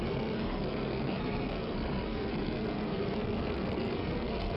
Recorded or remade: remade